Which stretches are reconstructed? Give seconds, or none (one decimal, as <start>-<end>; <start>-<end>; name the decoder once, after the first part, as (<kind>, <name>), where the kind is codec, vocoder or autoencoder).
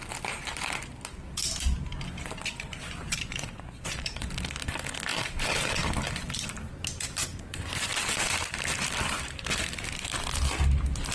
2.5-4.3 (vocoder, Vocos); 7.3-7.9